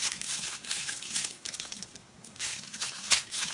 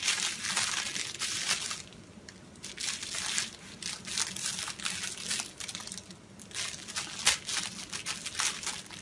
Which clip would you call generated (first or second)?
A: first